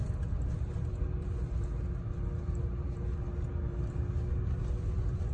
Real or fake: real